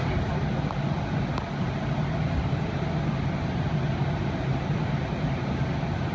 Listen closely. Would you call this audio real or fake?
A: real